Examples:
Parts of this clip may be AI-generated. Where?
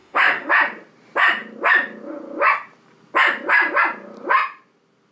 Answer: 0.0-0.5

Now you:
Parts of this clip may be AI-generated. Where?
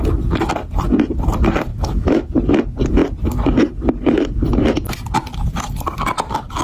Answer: 1.7-2.3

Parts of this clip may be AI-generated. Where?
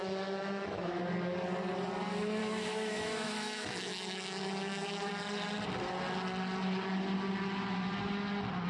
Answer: 0.0-1.0; 2.4-5.1